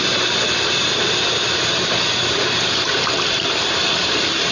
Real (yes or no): yes